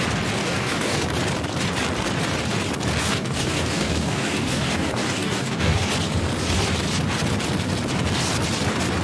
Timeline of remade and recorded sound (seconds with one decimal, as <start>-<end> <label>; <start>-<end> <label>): 0.0-0.4 recorded; 0.4-1.0 remade; 1.0-3.0 recorded; 3.0-5.9 remade; 5.9-9.0 recorded